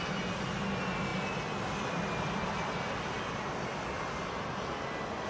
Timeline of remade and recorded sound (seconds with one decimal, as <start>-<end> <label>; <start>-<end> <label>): 0.0-5.3 recorded